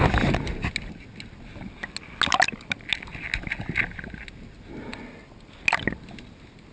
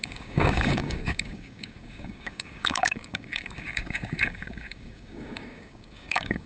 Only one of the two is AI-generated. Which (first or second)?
second